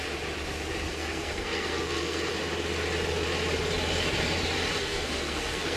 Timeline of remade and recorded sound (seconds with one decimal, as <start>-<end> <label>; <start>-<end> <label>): 0.0-0.9 recorded; 0.9-2.3 remade; 2.3-4.8 recorded; 4.8-5.8 remade